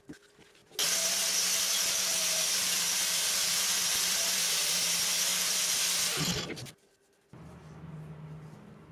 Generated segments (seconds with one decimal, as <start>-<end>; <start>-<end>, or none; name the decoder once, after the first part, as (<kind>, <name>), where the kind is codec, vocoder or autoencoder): none